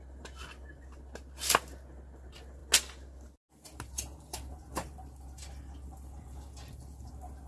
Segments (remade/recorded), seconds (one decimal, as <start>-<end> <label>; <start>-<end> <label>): 0.0-7.5 recorded

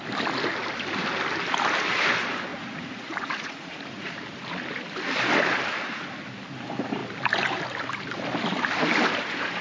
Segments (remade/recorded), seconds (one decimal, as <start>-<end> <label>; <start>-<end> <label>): 0.0-2.5 recorded; 2.5-4.2 remade; 4.2-9.6 recorded